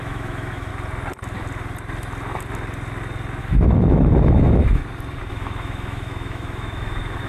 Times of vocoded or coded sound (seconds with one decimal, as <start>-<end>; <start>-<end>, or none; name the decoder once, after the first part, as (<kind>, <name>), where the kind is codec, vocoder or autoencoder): 0.0-0.7 (autoencoder, DAC-VAE); 3.4-4.8; 5.3-7.3

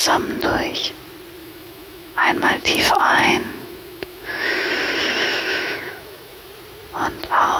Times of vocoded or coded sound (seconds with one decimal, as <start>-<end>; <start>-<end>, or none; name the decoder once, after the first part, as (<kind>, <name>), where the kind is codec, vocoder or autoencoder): 1.4-4.7 (autoencoder, DAC-VAE); 5.3-6.5

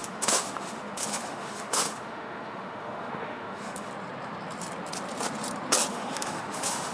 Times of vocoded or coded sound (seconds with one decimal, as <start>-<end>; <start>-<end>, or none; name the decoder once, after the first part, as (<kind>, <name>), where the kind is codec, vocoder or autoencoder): 0.0-3.9 (autoencoder, DAC-VAE); 5.9-6.9